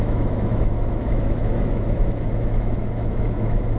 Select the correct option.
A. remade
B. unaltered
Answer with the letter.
A